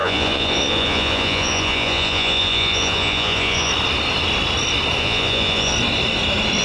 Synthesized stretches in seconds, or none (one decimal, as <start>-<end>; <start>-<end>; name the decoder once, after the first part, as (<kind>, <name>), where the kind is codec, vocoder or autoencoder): 0.0-3.7 (vocoder, Vocos); 5.0-5.7